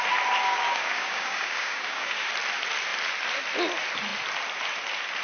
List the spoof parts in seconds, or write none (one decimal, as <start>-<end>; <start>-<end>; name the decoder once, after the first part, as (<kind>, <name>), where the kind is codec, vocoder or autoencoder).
0.4-2.3 (codec, DAC)